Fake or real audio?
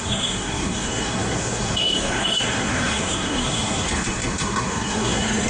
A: fake